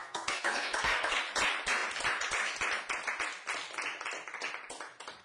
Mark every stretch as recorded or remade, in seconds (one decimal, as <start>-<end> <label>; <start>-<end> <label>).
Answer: 0.0-1.2 remade; 1.2-5.2 recorded